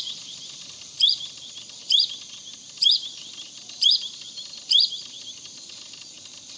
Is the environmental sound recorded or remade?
recorded